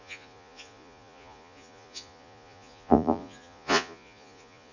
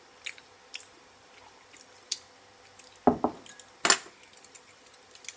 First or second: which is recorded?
second